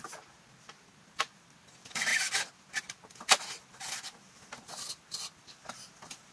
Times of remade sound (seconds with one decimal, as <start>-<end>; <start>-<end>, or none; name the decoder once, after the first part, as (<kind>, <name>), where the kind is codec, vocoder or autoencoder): none